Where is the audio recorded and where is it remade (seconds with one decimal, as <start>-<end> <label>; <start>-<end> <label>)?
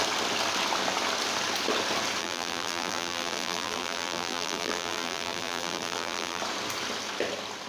0.0-2.2 recorded; 2.2-6.4 remade; 6.4-7.7 recorded